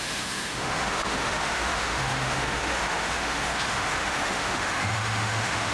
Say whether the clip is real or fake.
fake